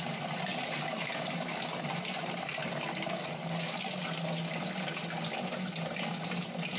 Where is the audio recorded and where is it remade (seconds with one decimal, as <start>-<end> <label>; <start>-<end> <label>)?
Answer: 0.0-6.8 recorded